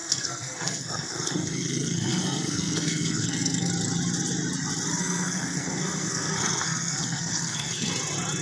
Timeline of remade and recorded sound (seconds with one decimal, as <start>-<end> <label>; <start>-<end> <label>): 0.0-3.7 remade; 3.7-5.0 recorded; 5.0-7.9 remade; 7.9-8.4 recorded